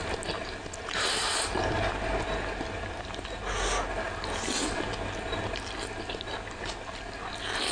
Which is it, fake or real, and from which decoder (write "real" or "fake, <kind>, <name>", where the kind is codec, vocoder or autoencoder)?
real